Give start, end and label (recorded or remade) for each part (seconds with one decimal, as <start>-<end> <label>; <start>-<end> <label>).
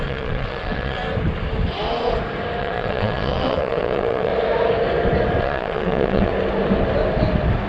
0.0-1.0 remade; 1.0-2.6 recorded; 2.6-4.3 remade; 4.3-5.4 recorded; 5.4-6.3 remade; 6.3-7.7 recorded